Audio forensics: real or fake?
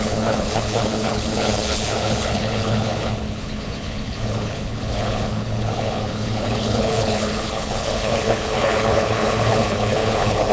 fake